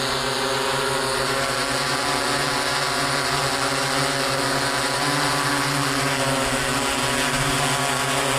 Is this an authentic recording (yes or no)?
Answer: yes